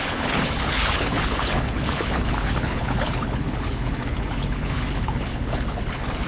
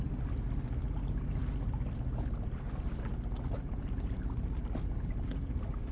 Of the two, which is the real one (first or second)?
second